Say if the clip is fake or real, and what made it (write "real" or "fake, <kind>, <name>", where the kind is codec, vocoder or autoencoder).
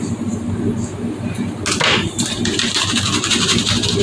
real